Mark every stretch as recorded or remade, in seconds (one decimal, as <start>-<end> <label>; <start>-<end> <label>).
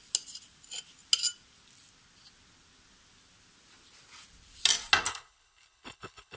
0.0-5.1 recorded; 5.1-6.4 remade